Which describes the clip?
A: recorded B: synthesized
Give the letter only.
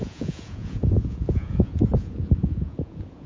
B